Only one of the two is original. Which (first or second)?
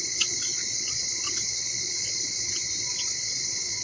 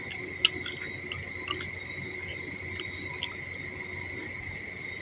second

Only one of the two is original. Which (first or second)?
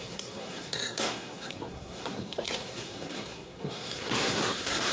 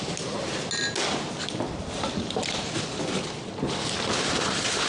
second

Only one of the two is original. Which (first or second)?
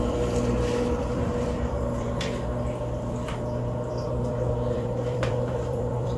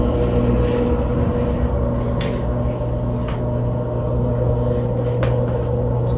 second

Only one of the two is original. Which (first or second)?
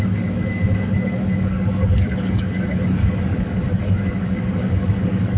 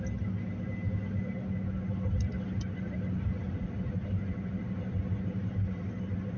second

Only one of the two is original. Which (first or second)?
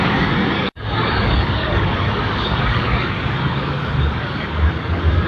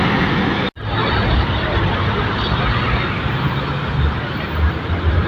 second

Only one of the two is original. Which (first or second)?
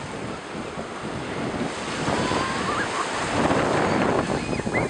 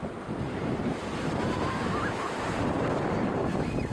first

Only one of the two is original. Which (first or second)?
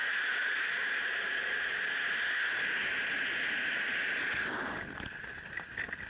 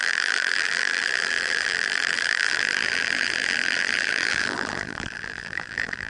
first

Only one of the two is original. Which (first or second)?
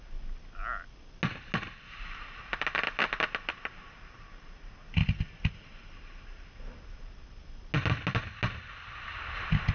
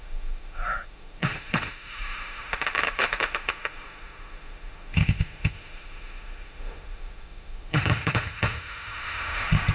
first